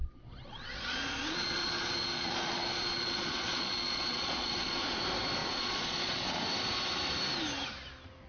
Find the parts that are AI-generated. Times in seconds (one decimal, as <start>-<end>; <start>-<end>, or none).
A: 0.0-5.0; 5.4-6.4